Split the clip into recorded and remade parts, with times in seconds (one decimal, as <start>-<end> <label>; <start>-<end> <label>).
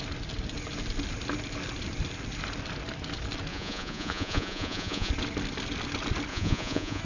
0.0-3.5 recorded; 3.5-5.1 remade; 5.1-6.3 recorded; 6.3-7.0 remade